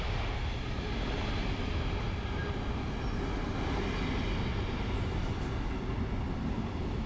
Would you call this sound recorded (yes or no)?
yes